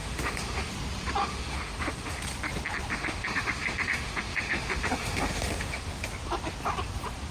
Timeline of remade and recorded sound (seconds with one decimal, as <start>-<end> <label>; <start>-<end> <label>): 0.0-0.7 remade; 0.7-1.2 recorded; 1.2-2.2 remade; 2.2-2.9 recorded; 2.9-5.9 remade; 5.9-7.3 recorded